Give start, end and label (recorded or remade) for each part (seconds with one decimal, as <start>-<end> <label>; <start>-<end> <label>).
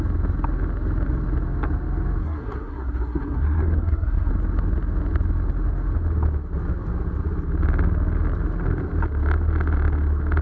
0.0-2.2 recorded; 2.2-4.3 remade; 4.3-10.4 recorded